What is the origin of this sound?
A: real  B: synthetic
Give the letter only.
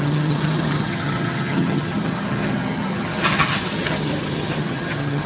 B